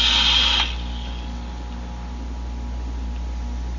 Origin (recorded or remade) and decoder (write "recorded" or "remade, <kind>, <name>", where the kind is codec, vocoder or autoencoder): recorded